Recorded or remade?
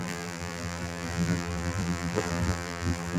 remade